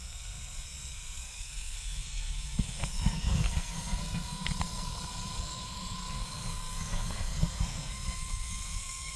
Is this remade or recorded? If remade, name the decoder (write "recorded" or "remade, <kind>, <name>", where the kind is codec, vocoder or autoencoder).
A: remade, codec, SNAC